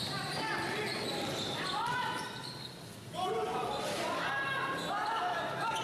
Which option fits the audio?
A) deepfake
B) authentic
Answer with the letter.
B